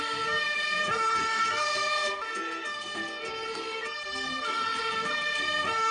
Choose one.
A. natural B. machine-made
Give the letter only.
B